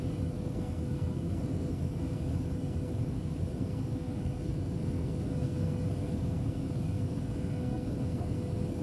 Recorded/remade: remade